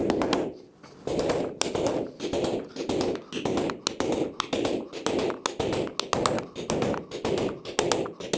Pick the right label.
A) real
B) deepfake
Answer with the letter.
A